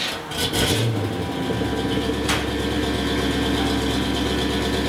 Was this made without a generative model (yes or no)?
yes